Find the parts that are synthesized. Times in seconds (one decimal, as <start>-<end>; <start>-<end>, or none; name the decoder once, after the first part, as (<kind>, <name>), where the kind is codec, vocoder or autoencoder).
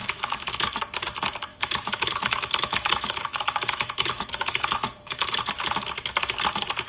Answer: 0.0-0.8 (autoencoder, DAC-VAE); 1.5-5.5